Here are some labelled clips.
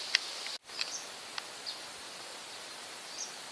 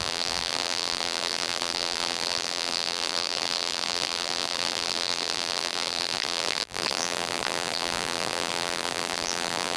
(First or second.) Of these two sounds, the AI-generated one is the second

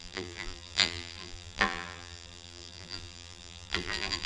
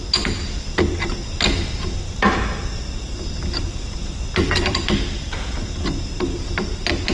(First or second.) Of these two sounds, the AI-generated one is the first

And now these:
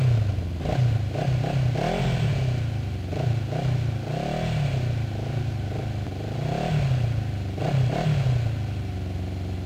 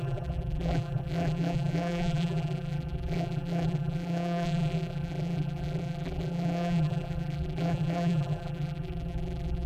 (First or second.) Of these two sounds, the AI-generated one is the second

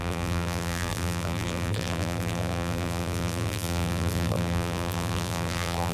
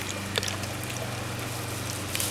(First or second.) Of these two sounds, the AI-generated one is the first